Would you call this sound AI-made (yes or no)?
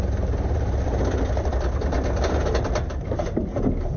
no